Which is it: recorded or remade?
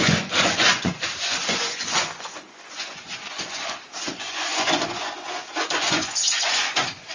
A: remade